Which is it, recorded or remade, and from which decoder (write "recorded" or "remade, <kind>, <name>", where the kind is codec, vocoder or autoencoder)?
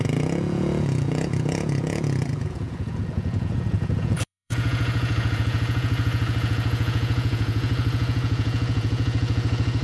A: remade, vocoder, Vocos